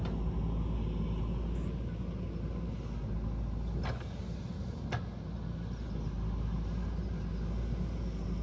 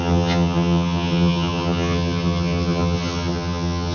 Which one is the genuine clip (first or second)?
first